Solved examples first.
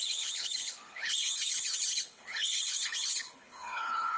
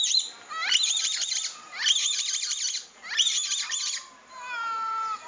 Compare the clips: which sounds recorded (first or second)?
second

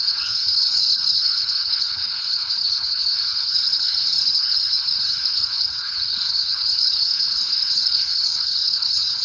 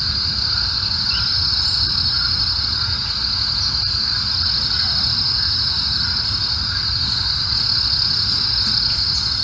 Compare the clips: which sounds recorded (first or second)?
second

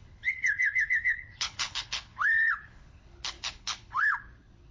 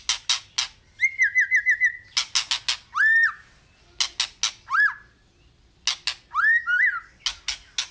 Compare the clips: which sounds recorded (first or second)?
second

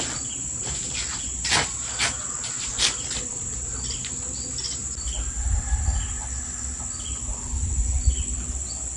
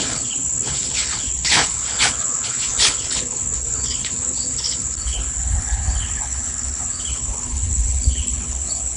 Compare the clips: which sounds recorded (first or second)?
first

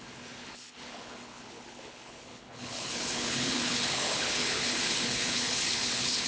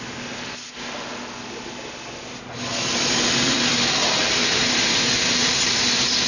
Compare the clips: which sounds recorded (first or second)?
second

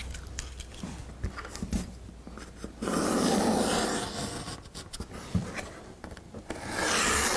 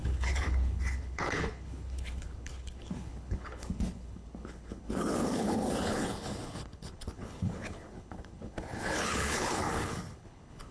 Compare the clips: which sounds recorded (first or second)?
first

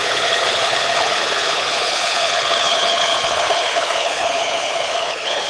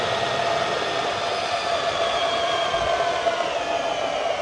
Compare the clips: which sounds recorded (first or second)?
second